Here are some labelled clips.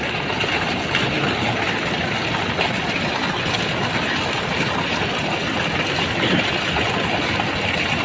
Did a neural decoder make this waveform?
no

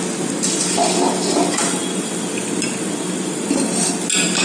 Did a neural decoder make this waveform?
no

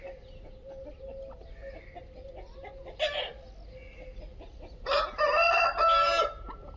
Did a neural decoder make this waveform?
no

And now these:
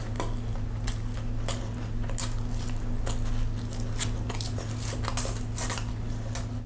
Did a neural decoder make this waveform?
no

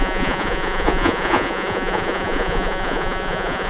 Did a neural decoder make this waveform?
yes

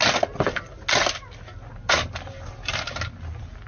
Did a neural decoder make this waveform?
no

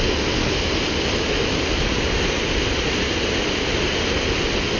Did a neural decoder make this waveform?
no